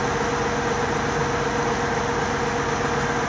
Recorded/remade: recorded